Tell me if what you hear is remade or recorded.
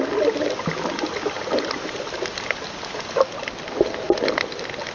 recorded